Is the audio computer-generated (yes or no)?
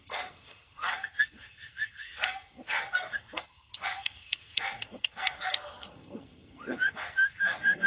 yes